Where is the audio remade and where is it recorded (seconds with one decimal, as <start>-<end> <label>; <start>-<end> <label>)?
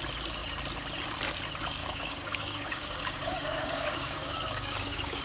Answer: 0.0-1.8 recorded; 1.8-5.2 remade